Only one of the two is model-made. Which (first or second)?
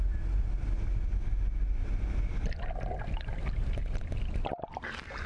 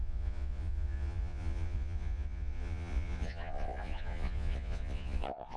second